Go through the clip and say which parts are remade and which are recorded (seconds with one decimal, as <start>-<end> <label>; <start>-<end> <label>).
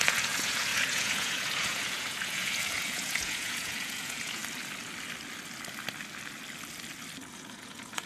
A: 0.0-4.4 remade; 4.4-7.3 recorded; 7.3-8.1 remade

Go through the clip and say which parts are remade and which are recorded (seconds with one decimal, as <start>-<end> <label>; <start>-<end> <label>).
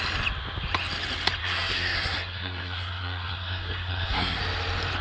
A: 0.0-1.4 recorded; 1.4-4.4 remade; 4.4-5.0 recorded